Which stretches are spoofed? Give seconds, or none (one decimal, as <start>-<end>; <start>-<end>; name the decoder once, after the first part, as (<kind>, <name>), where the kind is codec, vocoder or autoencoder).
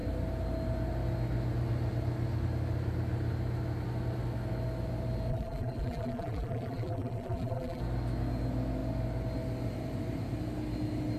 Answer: 5.3-7.8 (vocoder, BigVGAN v2)